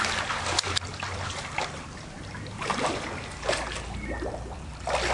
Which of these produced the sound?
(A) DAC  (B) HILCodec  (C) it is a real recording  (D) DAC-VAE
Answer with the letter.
C